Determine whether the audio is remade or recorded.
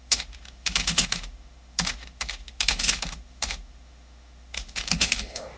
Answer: remade